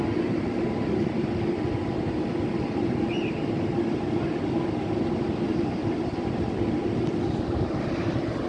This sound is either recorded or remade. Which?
recorded